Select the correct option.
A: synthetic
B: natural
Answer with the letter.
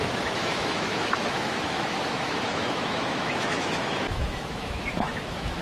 A